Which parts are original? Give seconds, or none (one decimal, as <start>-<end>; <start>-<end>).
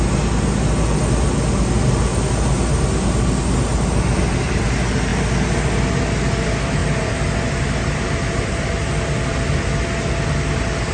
0.0-10.9